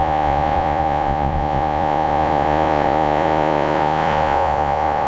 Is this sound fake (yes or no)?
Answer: yes